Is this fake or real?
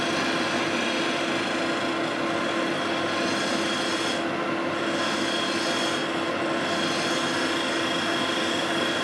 real